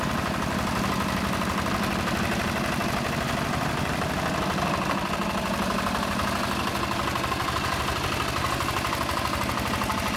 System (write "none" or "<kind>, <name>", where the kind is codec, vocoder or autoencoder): none